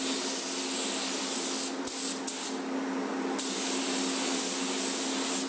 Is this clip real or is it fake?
real